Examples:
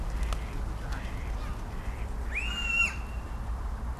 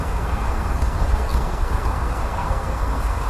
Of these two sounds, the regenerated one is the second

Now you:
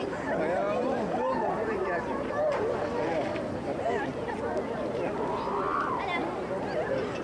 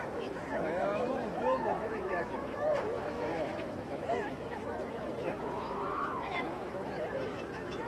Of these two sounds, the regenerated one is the second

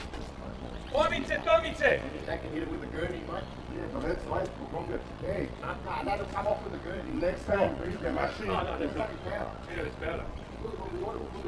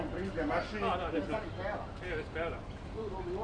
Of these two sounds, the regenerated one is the first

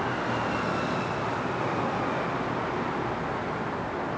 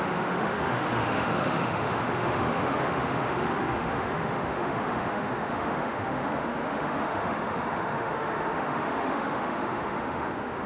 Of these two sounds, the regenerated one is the second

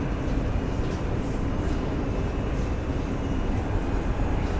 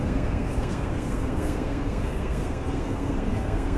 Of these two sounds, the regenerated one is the second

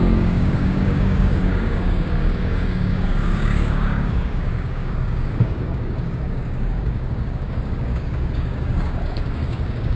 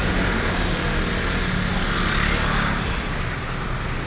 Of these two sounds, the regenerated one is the first